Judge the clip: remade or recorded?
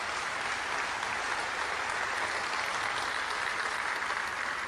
recorded